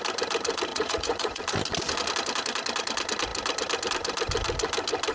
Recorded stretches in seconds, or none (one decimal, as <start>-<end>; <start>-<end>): 0.0-0.7; 1.4-5.1